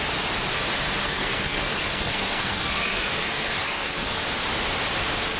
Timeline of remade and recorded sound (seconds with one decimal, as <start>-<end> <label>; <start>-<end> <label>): 0.0-1.0 recorded; 1.0-4.2 remade; 4.2-5.4 recorded